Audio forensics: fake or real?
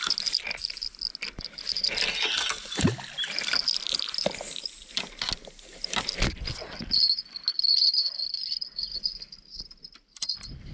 real